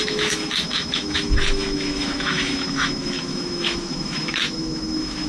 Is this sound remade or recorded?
remade